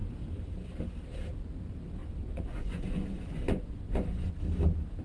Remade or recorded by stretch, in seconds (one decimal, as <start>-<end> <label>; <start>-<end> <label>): 0.0-2.0 recorded; 2.0-4.3 remade; 4.3-5.0 recorded

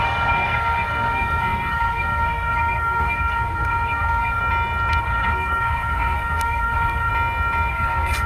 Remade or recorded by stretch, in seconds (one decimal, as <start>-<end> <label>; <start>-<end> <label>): 0.0-4.4 remade; 4.4-5.0 recorded; 5.0-7.1 remade; 7.1-7.7 recorded; 7.7-8.3 remade

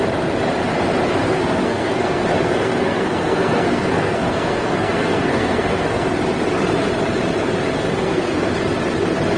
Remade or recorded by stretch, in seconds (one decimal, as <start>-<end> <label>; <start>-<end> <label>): 0.0-1.2 recorded; 1.2-6.1 remade; 6.1-7.9 recorded; 7.9-8.5 remade; 8.5-9.4 recorded

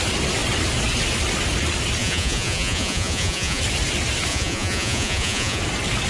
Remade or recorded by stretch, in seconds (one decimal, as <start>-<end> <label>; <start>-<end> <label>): 0.0-2.0 recorded; 2.0-3.6 remade; 3.6-4.3 recorded; 4.3-5.6 remade; 5.6-6.1 recorded

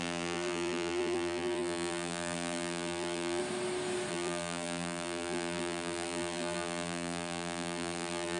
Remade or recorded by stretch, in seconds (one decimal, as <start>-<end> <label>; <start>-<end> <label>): 0.0-3.4 remade; 3.4-4.1 recorded; 4.1-8.4 remade

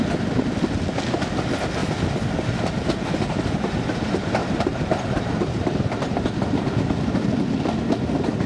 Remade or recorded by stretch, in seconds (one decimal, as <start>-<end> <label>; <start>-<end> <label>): 0.0-1.8 recorded; 1.8-2.3 remade; 2.3-4.4 recorded; 4.4-6.7 remade; 6.7-8.5 recorded